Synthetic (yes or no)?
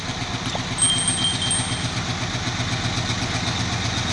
no